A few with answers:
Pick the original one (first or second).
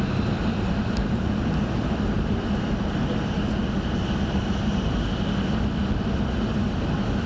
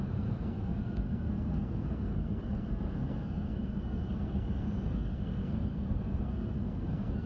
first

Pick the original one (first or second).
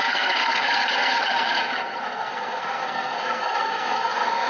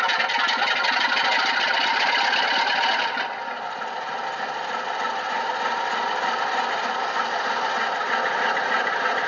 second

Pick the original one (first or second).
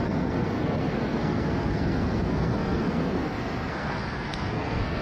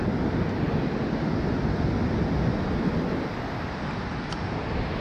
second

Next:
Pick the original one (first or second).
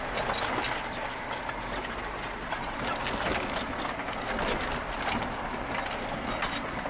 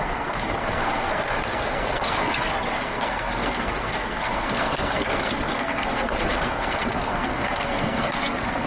first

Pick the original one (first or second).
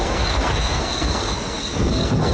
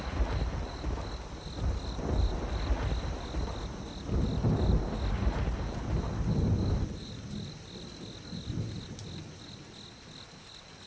second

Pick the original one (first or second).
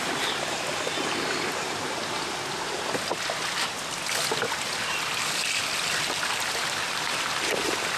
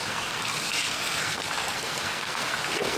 first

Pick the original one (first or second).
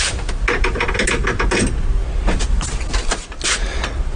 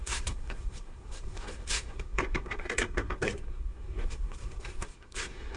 first